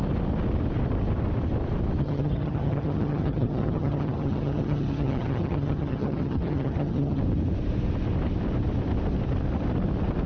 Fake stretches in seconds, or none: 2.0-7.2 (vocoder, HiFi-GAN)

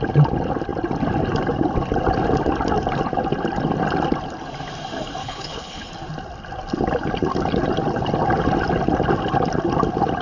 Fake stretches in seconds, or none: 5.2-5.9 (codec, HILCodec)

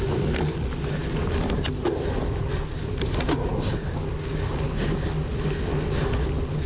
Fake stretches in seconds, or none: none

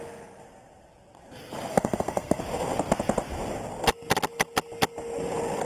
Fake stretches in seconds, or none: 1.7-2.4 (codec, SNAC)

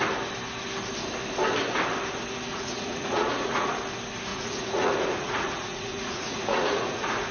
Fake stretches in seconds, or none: 2.5-3.8 (vocoder, Vocos); 4.3-7.3

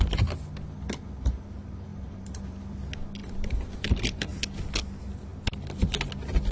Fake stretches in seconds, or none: 1.9-2.6 (vocoder, BigVGAN v2); 3.2-4.4